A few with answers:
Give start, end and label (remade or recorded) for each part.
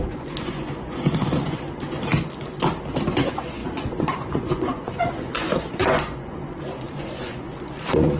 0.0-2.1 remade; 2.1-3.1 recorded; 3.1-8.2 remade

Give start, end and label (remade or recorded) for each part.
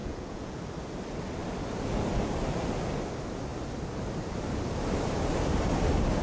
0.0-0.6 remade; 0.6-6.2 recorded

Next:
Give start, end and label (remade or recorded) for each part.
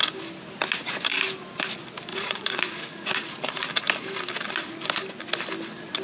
0.0-2.1 recorded; 2.1-3.3 remade; 3.3-6.0 recorded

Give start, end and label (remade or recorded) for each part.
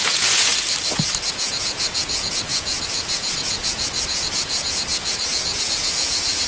0.0-0.5 remade; 0.5-1.3 recorded; 1.3-6.5 remade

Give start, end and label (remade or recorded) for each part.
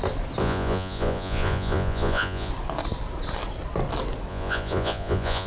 0.0-0.4 recorded; 0.4-2.5 remade; 2.5-4.3 recorded; 4.3-5.5 remade